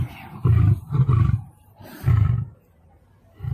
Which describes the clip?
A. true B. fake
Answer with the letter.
A